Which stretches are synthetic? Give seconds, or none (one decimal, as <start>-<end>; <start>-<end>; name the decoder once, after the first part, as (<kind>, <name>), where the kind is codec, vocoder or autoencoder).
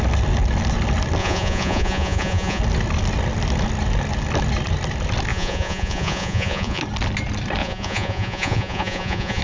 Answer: 1.2-2.6 (vocoder, Vocos); 5.3-6.8; 7.6-9.4